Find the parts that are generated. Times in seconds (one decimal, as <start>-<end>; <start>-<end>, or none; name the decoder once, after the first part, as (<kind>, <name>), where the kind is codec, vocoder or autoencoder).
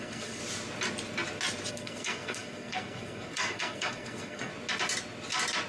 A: 0.0-0.4 (codec, SNAC); 1.7-4.5